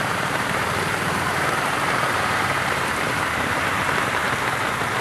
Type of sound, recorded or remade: remade